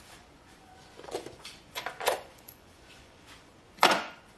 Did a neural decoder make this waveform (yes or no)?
yes